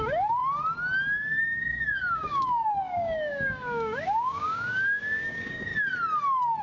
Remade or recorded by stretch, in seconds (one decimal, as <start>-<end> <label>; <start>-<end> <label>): 0.0-0.4 remade; 0.4-1.4 recorded; 1.4-5.7 remade; 5.7-6.6 recorded